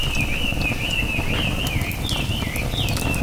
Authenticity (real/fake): real